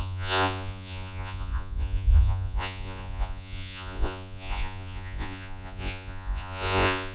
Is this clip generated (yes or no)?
yes